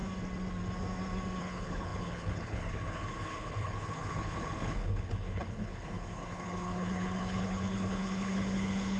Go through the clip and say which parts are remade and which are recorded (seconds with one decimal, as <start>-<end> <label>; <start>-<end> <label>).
0.0-1.4 recorded; 1.4-9.0 remade